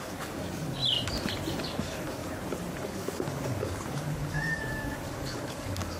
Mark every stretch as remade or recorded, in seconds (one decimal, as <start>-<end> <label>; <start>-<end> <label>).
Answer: 0.0-0.8 remade; 0.8-1.5 recorded; 1.5-2.2 remade; 2.2-2.7 recorded; 2.7-6.0 remade